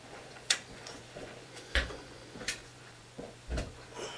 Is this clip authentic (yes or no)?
no